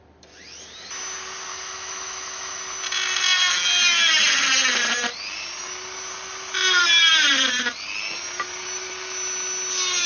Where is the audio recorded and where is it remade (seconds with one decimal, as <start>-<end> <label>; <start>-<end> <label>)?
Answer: 0.0-1.5 recorded; 1.5-2.6 remade; 2.6-10.1 recorded